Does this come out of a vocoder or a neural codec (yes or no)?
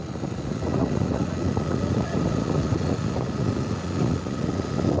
yes